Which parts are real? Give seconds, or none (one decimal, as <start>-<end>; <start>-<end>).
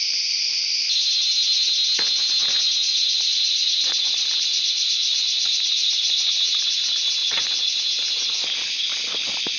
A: 0.0-2.9; 6.7-7.2; 7.8-9.6